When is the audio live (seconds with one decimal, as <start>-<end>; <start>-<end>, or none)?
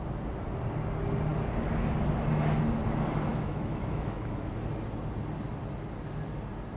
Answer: 0.0-3.3; 4.5-6.8